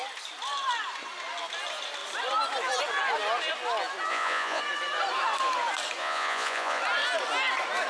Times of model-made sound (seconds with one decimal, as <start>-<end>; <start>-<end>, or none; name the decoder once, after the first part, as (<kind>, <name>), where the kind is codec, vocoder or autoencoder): 4.1-4.6 (vocoder, Vocos); 6.0-6.8